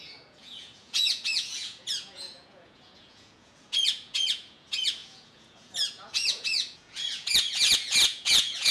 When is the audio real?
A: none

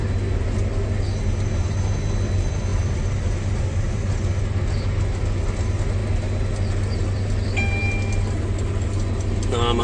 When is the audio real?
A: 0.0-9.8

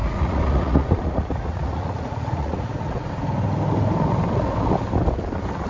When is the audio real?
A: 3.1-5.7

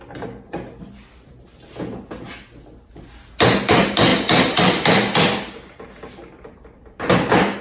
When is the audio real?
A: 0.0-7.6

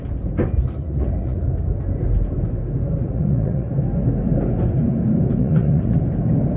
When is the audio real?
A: 0.0-0.8; 1.5-3.0; 3.7-5.4; 6.0-6.6